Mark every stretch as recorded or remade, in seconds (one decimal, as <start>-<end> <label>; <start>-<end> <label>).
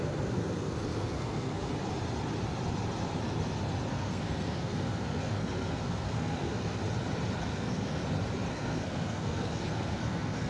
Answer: 0.0-1.7 remade; 1.7-3.9 recorded; 3.9-6.8 remade; 6.8-7.4 recorded; 7.4-8.0 remade; 8.0-8.5 recorded; 8.5-10.5 remade